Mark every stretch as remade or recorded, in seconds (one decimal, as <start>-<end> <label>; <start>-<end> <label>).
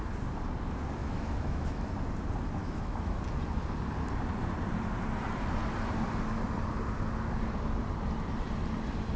0.0-1.0 recorded; 1.0-1.9 remade; 1.9-2.6 recorded; 2.6-3.2 remade; 3.2-9.2 recorded